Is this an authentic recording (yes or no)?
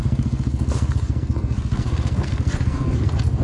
no